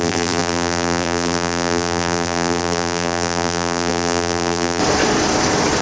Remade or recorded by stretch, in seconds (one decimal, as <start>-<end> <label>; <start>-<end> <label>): 0.0-4.8 remade; 4.8-5.8 recorded